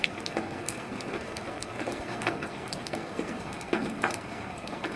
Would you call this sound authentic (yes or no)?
no